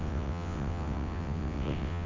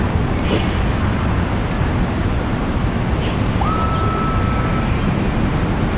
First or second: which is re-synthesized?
first